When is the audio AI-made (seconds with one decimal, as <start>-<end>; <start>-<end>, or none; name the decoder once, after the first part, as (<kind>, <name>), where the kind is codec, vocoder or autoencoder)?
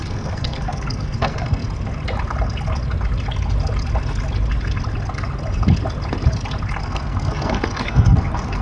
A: 0.0-1.6 (codec, SNAC); 6.8-8.6